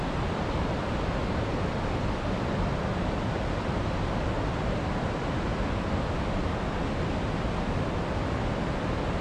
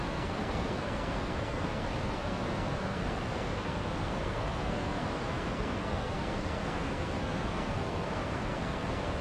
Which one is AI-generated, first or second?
second